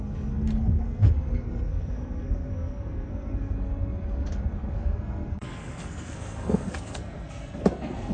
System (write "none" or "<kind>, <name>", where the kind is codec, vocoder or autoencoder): codec, SNAC